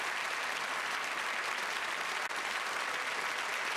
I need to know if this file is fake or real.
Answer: real